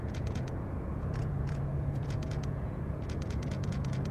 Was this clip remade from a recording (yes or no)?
yes